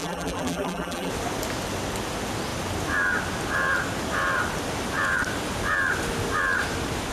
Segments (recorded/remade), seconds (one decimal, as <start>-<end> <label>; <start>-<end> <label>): 0.0-1.1 remade; 1.1-7.1 recorded